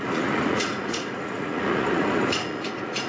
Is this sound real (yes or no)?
no